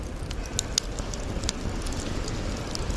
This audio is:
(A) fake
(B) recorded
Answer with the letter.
B